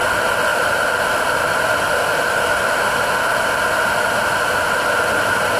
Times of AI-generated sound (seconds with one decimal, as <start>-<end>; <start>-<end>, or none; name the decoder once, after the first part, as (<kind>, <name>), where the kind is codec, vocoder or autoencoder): none